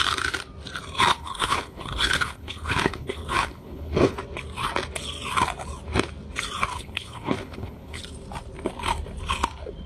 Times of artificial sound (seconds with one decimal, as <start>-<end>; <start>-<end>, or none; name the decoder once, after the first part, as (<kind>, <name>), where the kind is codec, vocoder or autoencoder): 1.1-4.2 (codec, HILCodec); 6.7-8.0